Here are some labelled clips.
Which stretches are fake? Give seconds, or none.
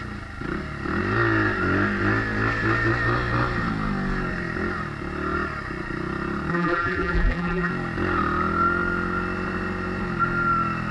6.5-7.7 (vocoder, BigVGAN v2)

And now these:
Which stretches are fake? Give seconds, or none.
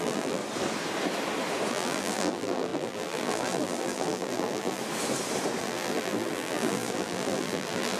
0.0-0.4 (vocoder, BigVGAN v2); 1.7-4.8; 5.6-8.0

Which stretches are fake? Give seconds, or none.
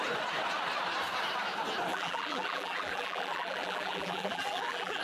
1.9-5.0 (vocoder, BigVGAN v2)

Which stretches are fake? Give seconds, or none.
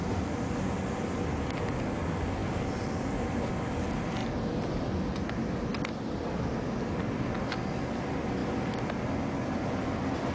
4.2-5.3 (vocoder, BigVGAN v2); 5.7-6.5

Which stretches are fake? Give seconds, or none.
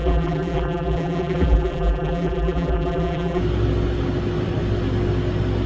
0.0-3.4 (vocoder, BigVGAN v2)